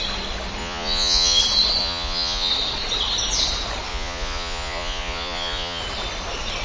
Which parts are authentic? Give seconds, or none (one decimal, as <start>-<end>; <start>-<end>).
0.0-0.6; 1.4-1.8; 2.5-3.9; 5.8-6.6